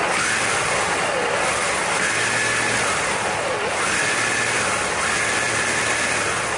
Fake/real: real